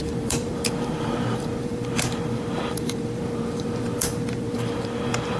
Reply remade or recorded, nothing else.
remade